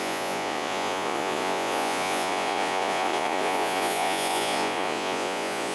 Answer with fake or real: fake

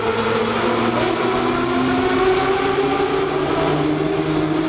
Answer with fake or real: real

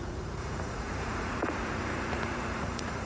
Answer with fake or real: fake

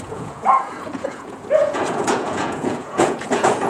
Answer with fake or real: fake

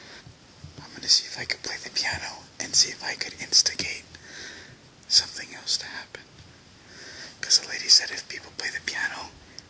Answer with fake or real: real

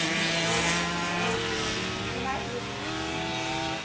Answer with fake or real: real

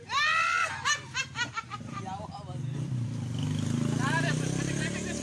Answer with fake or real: real